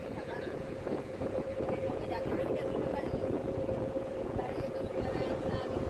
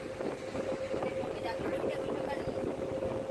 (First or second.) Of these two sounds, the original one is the second